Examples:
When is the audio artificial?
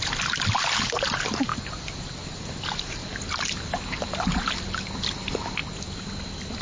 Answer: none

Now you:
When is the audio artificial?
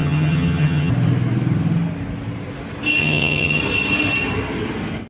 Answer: 0.0-0.9 (vocoder, HiFi-GAN); 3.0-3.6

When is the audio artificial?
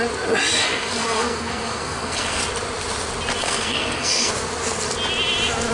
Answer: 0.6-2.4 (codec, SNAC); 3.4-4.3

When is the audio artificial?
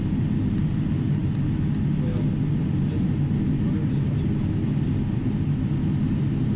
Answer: none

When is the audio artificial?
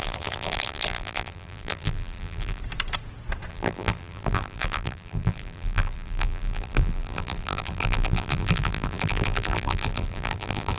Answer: 0.0-2.6 (vocoder, BigVGAN v2); 3.5-10.8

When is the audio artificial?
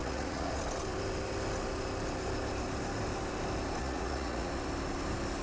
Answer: 0.0-0.5 (vocoder, Vocos); 3.8-4.5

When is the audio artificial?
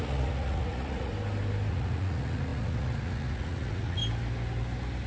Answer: 0.0-1.1 (vocoder, Vocos); 1.7-4.0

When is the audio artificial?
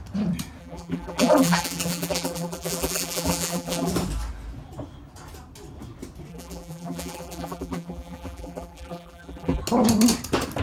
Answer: 0.6-3.9 (vocoder, BigVGAN v2); 6.3-9.6